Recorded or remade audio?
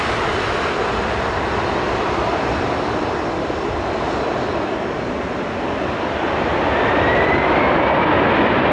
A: recorded